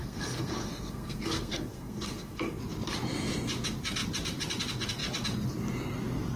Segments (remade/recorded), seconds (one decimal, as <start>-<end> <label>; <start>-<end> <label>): 0.0-2.6 remade; 2.6-6.4 recorded